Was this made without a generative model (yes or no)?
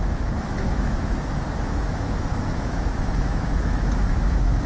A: no